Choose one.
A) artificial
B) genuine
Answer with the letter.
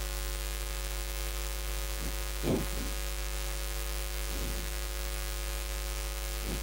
A